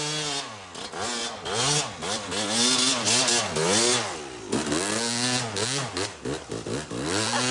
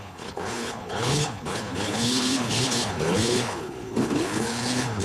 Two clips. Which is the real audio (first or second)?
first